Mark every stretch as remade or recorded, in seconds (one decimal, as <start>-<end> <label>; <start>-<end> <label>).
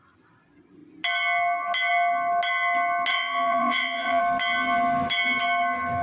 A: 0.0-3.1 recorded; 3.1-4.2 remade; 4.2-6.0 recorded